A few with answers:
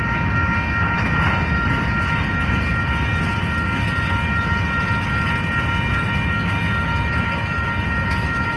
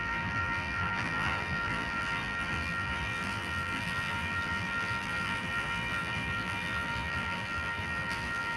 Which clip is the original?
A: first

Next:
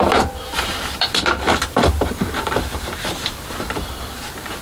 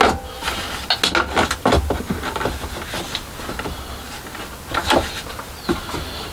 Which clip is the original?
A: second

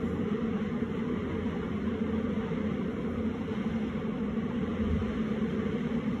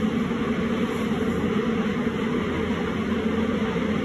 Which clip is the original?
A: second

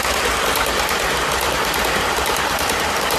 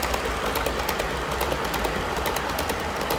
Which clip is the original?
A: second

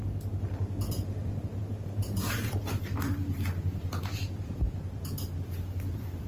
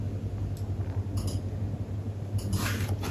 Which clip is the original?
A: second